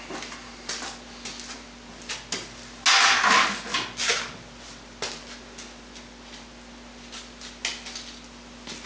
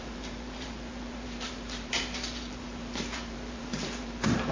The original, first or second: first